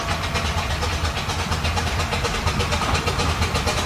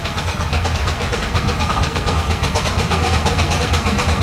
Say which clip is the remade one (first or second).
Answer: second